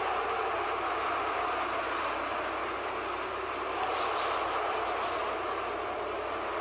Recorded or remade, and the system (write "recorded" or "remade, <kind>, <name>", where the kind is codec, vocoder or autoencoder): recorded